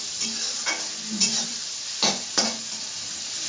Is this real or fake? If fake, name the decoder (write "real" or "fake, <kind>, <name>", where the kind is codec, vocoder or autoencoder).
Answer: real